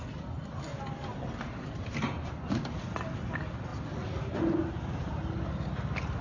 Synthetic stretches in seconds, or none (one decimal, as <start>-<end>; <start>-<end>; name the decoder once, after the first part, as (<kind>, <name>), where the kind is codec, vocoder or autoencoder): 0.7-2.6 (vocoder, BigVGAN v2)

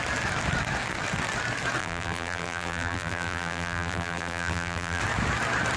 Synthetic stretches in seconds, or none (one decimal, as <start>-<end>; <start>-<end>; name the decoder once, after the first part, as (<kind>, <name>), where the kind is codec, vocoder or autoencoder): 1.8-5.0 (vocoder, BigVGAN v2)

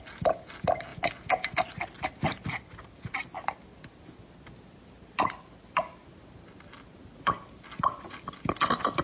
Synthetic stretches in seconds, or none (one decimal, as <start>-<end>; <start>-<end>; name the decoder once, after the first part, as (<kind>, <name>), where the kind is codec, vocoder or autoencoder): none